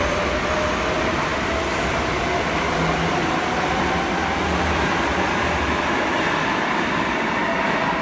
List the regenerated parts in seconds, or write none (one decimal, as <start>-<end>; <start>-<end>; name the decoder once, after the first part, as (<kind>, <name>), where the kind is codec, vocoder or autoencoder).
none